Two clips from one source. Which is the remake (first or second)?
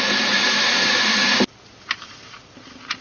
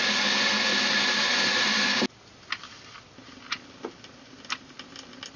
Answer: first